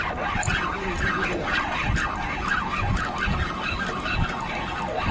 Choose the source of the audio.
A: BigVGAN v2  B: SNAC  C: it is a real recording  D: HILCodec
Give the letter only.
C